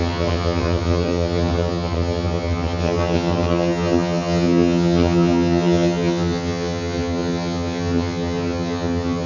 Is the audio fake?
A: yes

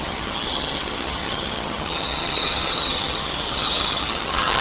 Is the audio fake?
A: yes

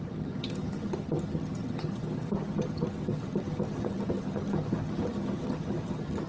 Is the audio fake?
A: yes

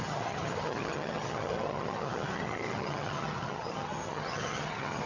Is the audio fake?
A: yes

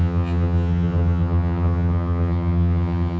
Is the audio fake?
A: yes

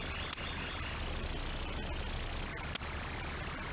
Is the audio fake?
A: no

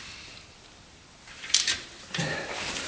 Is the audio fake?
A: no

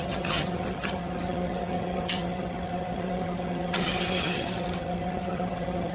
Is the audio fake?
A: yes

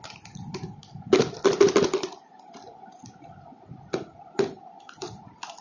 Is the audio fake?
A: no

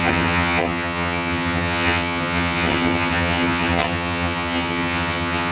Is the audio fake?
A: yes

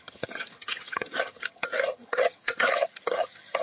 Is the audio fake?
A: yes